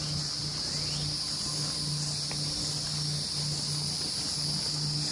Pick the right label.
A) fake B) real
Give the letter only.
B